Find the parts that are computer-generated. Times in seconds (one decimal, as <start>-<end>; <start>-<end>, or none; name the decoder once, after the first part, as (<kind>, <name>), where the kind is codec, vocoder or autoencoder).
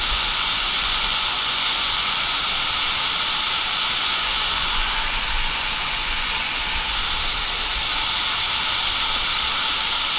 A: 0.0-2.4 (vocoder, Vocos); 4.0-7.0